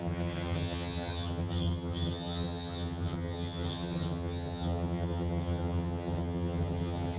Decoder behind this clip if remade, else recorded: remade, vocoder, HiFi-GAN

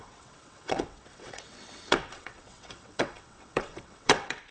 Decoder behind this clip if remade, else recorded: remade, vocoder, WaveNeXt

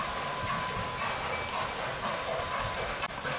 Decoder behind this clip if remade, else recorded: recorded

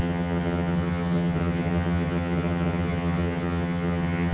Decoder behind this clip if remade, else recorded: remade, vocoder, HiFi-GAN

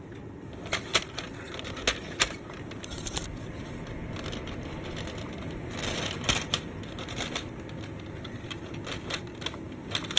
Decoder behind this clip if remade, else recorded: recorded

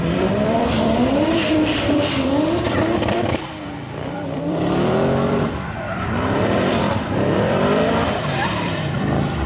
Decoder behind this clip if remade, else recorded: remade, vocoder, BigVGAN v2